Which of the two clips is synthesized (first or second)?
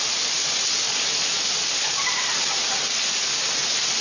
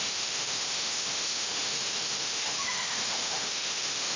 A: second